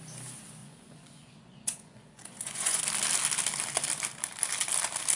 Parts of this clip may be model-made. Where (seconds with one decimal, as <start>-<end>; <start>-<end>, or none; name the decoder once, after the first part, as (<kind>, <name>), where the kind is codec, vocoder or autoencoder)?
0.6-2.8 (vocoder, Vocos)